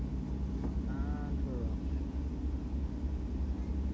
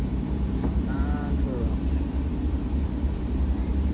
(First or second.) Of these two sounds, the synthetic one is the second